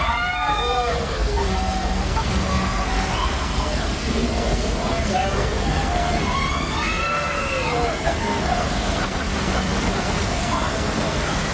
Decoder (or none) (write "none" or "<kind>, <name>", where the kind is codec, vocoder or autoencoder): codec, SNAC